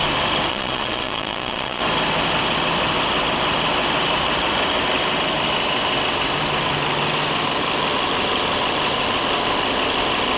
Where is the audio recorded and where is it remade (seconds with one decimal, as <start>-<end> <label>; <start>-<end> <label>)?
0.0-0.5 recorded; 0.5-1.8 remade; 1.8-10.4 recorded